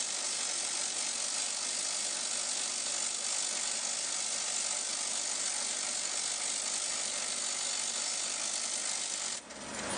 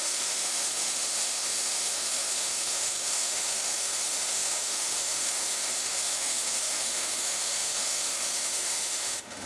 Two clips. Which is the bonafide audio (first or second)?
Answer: first